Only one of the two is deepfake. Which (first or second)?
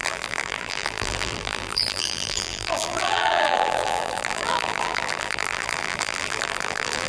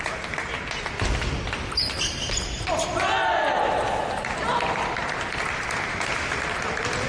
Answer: first